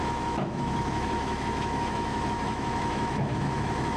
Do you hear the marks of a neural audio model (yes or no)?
yes